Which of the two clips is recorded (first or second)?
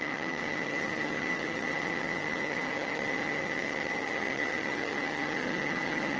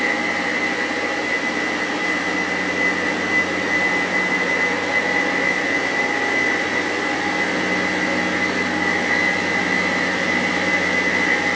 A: second